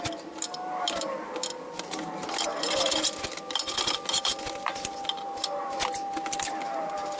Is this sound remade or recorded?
recorded